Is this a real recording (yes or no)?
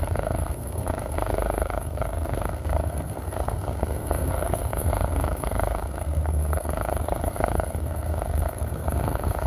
no